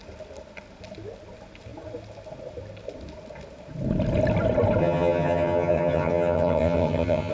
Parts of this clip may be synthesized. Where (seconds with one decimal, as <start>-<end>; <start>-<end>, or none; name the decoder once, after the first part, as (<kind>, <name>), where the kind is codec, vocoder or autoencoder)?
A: 4.8-7.3 (vocoder, HiFi-GAN)